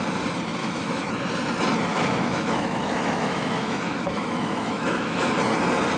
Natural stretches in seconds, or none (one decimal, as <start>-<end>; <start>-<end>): 0.0-0.6; 1.1-1.9; 5.3-6.0